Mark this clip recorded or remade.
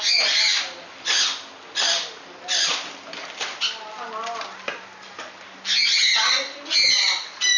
recorded